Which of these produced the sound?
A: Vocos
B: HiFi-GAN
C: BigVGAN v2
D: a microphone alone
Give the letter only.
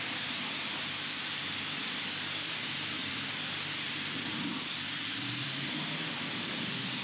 C